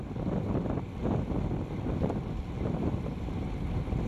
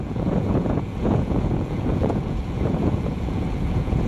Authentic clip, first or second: first